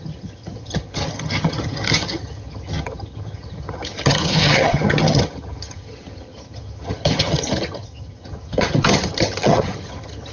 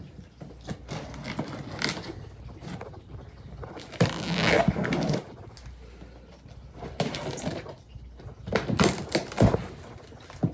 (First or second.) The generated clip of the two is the first